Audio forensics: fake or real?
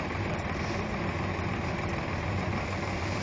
real